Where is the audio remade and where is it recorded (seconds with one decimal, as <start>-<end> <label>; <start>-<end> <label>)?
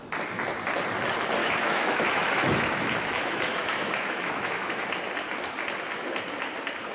0.0-1.4 recorded; 1.4-4.9 remade; 4.9-6.9 recorded